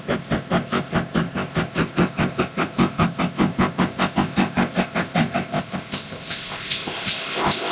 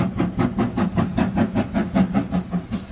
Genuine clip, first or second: second